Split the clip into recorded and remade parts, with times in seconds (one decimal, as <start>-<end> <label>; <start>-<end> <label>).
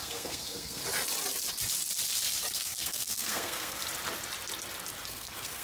0.0-0.8 remade; 0.8-2.5 recorded; 2.5-3.8 remade; 3.8-5.1 recorded; 5.1-5.6 remade